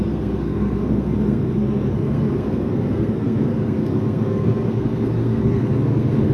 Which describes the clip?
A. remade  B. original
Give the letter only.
A